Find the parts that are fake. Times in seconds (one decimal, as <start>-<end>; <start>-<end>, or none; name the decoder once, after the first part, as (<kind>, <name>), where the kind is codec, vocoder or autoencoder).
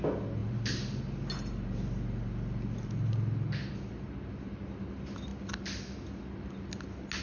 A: 0.4-1.0 (vocoder, BigVGAN v2)